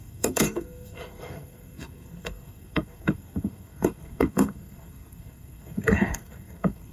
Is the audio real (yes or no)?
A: no